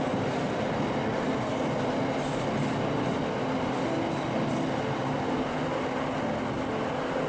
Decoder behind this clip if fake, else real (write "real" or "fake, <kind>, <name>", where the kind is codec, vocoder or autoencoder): real